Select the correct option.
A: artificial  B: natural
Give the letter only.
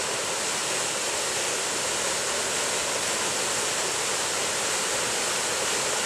B